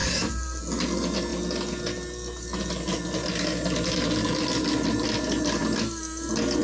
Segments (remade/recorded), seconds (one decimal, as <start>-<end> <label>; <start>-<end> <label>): 0.0-0.6 remade; 0.6-6.6 recorded